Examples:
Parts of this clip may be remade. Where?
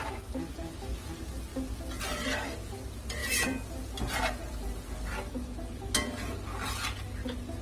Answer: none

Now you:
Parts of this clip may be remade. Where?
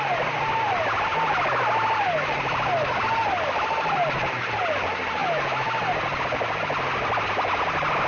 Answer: none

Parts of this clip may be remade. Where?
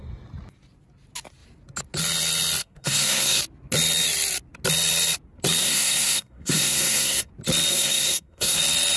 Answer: 2.6-3.4 (codec, SNAC); 5.6-7.3; 7.7-8.6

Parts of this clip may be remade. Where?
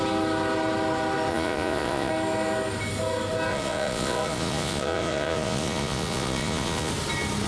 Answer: 1.3-2.1 (vocoder, Vocos); 3.5-6.9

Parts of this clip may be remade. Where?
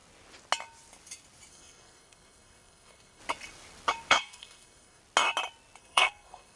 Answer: 1.5-3.2 (codec, SNAC); 4.1-5.0; 5.8-6.6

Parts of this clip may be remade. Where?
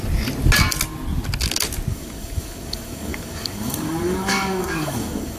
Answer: 1.9-5.4 (codec, DAC)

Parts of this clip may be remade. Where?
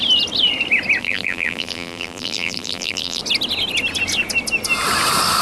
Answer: 1.0-3.2 (vocoder, BigVGAN v2)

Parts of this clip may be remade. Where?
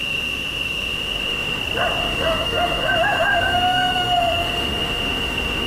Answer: 0.0-1.6 (autoencoder, DAC-VAE); 2.0-5.7